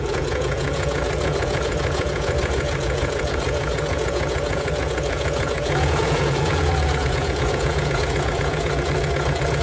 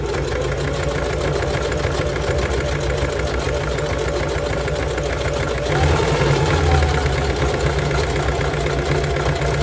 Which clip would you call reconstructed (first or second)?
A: first